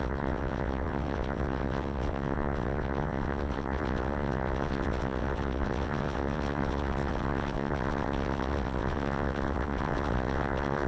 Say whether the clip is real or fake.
fake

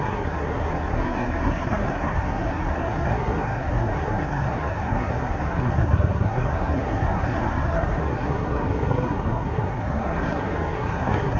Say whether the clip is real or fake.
fake